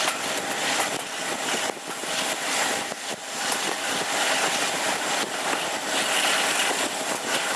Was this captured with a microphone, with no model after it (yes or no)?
yes